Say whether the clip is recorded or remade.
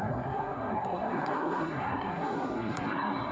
remade